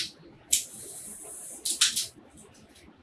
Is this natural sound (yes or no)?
yes